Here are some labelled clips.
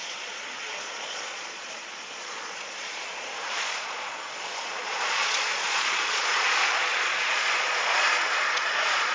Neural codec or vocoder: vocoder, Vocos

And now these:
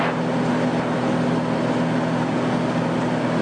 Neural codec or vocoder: none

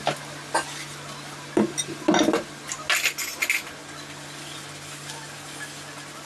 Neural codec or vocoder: none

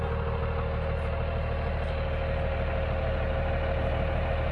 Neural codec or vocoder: none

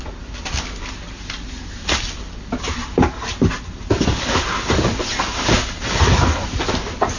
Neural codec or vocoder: vocoder, BigVGAN v2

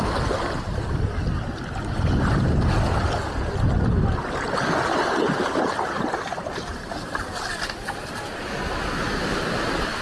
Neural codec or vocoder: none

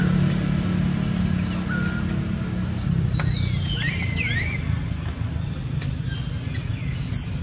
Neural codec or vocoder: none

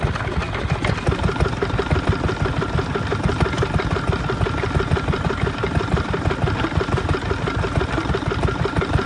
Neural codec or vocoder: none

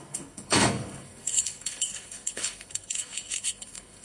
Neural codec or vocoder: codec, SNAC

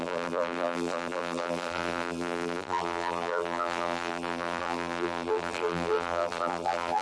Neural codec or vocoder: vocoder, BigVGAN v2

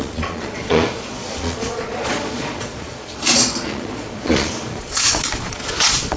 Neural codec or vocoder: vocoder, Vocos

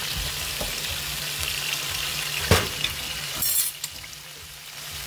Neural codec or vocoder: vocoder, BigVGAN v2